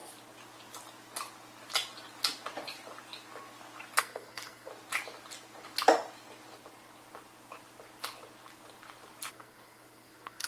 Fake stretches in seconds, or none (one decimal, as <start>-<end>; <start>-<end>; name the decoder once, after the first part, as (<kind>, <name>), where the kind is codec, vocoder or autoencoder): 4.0-4.7 (codec, SNAC); 9.3-10.5